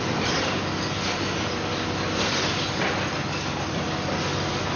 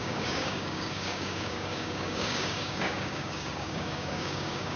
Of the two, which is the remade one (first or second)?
second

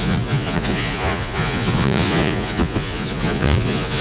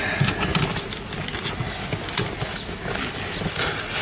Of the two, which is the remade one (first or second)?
first